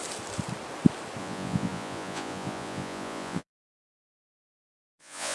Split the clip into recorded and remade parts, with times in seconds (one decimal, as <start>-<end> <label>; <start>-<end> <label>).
0.0-1.2 recorded; 1.2-5.3 remade